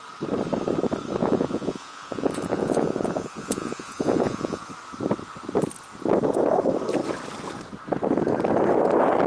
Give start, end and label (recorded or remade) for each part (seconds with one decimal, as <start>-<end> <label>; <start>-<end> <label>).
0.0-1.2 recorded; 1.2-4.7 remade; 4.7-9.3 recorded